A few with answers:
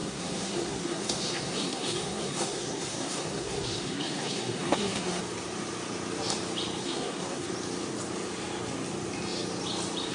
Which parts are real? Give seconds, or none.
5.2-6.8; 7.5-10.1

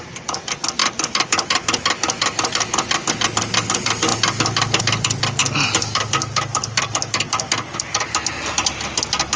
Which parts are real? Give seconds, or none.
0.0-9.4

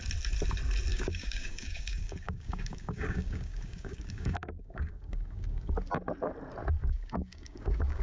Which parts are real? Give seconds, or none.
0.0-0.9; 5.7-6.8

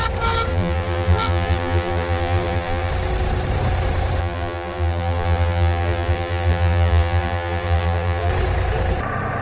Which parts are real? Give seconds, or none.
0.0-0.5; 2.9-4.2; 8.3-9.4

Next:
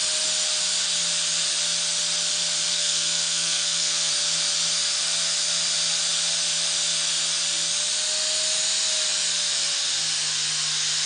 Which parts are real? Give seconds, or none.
0.0-2.7; 4.1-11.1

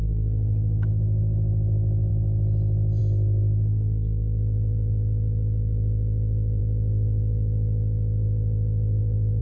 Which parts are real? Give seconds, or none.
0.0-9.4

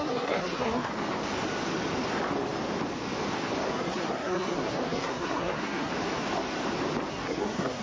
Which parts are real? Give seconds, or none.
0.9-3.7; 5.9-7.1

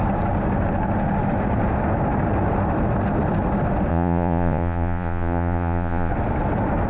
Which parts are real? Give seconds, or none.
0.0-3.9; 6.1-6.9